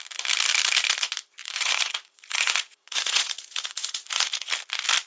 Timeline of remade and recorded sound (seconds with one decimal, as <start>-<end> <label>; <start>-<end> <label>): 0.0-1.4 recorded; 1.4-4.5 remade; 4.5-5.1 recorded